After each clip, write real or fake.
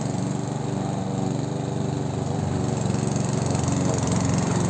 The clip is fake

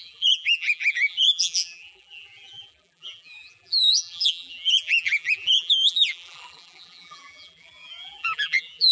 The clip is fake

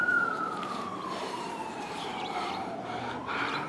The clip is fake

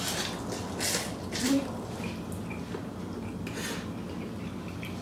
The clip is real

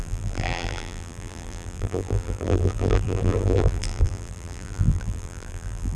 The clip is fake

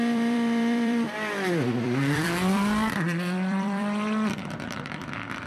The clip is fake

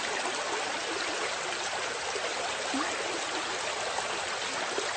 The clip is real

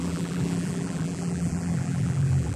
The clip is fake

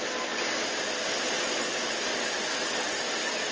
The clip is real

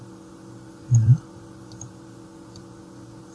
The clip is fake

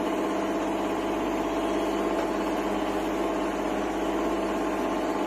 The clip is real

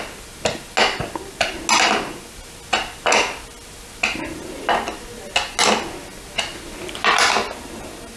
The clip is real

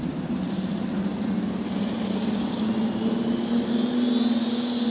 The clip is real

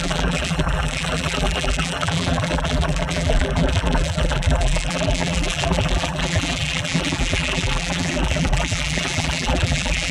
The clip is fake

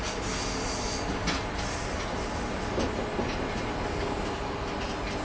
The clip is real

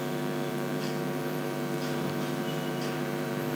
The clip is fake